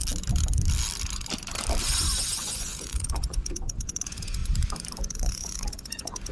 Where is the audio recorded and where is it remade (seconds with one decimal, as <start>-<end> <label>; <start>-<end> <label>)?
0.0-1.8 recorded; 1.8-4.4 remade; 4.4-5.0 recorded; 5.0-6.3 remade